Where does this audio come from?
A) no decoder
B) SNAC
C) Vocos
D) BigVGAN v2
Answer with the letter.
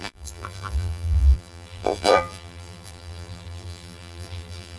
D